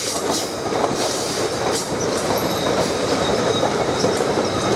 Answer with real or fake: fake